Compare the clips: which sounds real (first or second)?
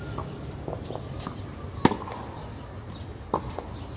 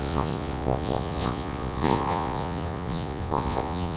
first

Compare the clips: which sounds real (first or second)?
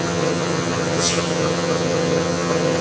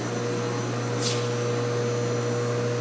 second